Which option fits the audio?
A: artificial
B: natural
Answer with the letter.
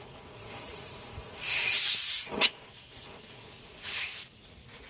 A